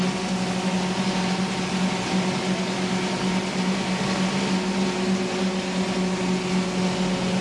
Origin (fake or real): real